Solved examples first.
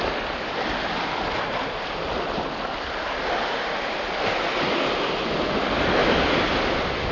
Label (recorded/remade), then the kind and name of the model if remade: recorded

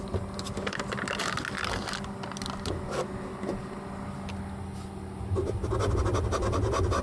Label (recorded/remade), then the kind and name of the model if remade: recorded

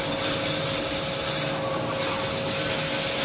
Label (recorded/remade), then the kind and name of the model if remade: recorded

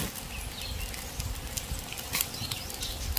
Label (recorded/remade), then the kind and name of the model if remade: recorded